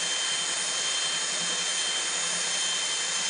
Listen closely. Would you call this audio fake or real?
real